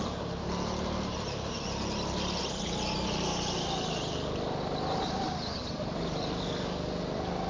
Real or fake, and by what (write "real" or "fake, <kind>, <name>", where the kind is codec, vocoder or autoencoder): real